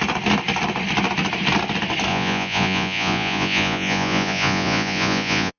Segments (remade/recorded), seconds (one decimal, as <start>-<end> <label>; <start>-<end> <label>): 0.0-2.1 recorded; 2.1-5.6 remade